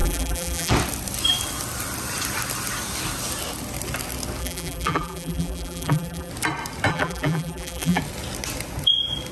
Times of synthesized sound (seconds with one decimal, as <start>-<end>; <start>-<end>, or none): 0.0-0.7; 4.4-6.3; 6.9-8.0